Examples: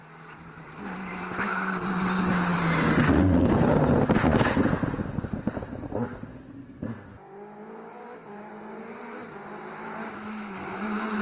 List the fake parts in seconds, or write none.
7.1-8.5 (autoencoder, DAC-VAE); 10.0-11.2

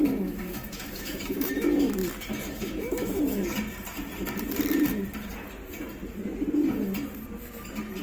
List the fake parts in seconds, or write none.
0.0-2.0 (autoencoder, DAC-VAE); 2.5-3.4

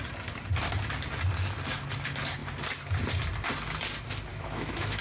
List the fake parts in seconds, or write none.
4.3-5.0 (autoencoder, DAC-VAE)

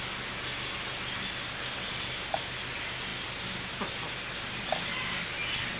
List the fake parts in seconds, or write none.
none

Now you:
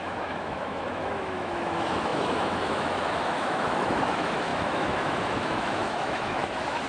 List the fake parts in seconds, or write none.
0.0-6.9 (autoencoder, DAC-VAE)